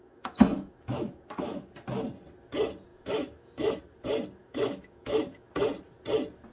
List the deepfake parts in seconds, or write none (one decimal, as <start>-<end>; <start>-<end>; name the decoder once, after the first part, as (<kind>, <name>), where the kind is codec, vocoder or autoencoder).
0.0-1.7 (autoencoder, DAC-VAE); 2.9-3.8; 4.4-5.5